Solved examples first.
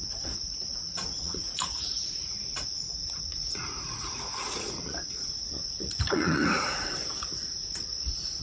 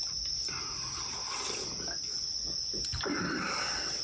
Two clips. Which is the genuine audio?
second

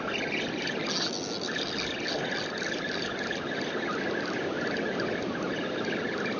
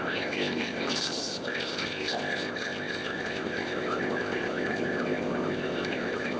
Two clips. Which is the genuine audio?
first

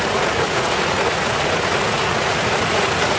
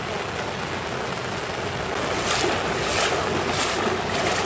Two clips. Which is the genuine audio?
second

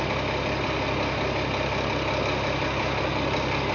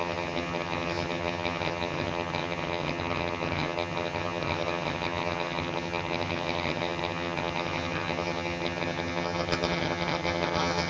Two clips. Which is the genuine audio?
first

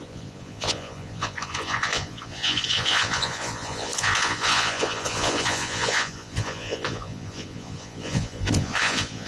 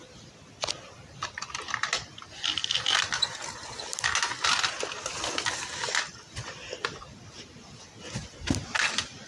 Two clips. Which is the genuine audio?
second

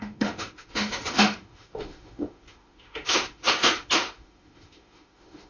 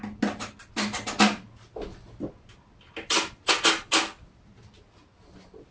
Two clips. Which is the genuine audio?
second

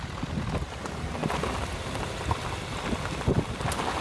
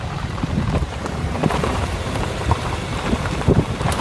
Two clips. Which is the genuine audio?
first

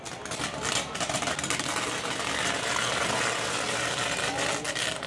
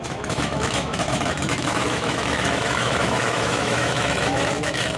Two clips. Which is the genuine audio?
first